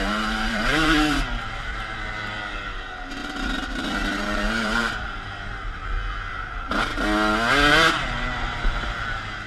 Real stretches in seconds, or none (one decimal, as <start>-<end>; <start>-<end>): 5.8-6.3; 6.9-7.7